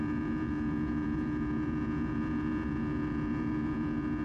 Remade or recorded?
remade